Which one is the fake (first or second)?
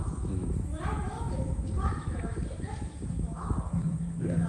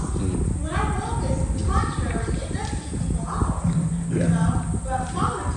first